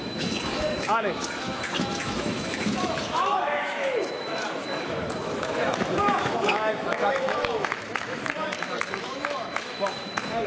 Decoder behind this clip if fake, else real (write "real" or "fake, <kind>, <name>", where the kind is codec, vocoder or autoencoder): fake, autoencoder, DAC-VAE